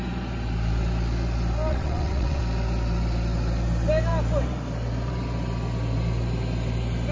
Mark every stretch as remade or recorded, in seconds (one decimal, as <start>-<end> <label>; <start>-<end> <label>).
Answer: 0.0-1.7 recorded; 1.7-2.4 remade; 2.4-7.1 recorded

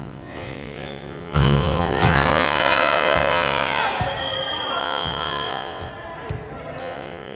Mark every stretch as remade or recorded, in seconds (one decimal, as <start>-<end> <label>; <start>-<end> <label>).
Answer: 0.0-3.8 remade; 3.8-4.8 recorded; 4.8-5.9 remade; 5.9-6.8 recorded; 6.8-7.4 remade

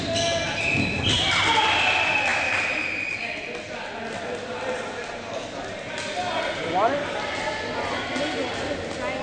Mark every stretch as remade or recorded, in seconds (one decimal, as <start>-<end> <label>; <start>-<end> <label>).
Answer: 0.0-9.2 recorded

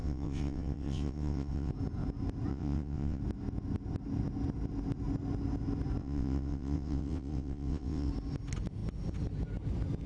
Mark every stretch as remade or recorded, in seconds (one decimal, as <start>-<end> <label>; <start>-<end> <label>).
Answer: 0.0-1.7 remade; 1.7-2.5 recorded; 2.5-3.2 remade; 3.2-6.0 recorded; 6.0-8.1 remade; 8.1-10.1 recorded

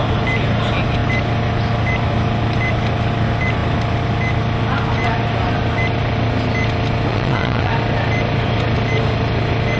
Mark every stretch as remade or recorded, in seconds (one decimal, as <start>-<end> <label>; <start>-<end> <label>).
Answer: 0.0-7.1 recorded; 7.1-7.7 remade; 7.7-9.8 recorded